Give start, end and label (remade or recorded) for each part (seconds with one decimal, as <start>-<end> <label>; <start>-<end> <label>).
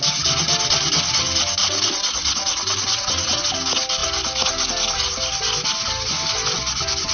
0.0-1.6 recorded; 1.6-3.4 remade; 3.4-7.1 recorded